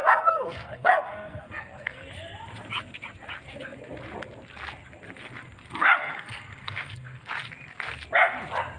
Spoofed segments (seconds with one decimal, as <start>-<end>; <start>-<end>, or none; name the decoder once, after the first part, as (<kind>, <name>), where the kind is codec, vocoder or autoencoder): 0.0-2.1 (codec, SNAC); 6.0-7.3